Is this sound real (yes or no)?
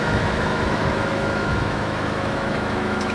no